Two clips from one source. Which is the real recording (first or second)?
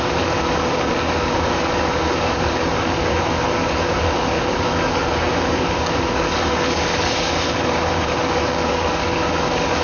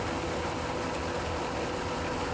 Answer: second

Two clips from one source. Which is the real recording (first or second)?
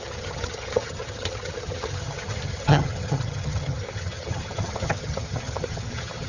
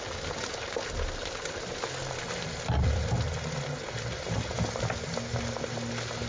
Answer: second